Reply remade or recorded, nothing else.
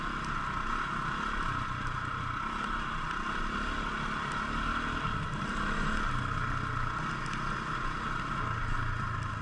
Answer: recorded